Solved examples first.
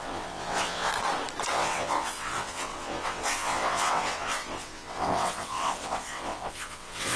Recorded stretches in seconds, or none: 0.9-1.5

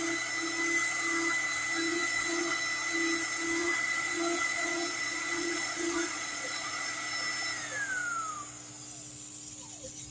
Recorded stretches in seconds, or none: 0.0-1.9; 2.6-3.6; 6.9-10.1